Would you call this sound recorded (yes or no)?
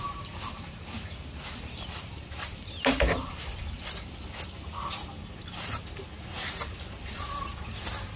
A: yes